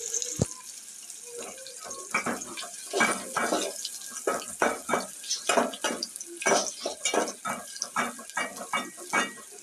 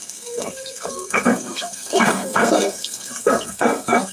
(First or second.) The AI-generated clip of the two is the second